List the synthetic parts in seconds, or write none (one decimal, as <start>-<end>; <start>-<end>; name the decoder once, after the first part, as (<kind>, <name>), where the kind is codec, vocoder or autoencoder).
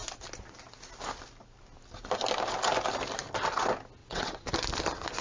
4.0-4.5 (vocoder, WaveNeXt)